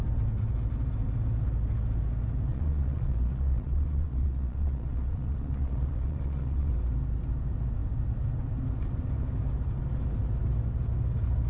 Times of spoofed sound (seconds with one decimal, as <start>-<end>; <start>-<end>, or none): 2.5-6.7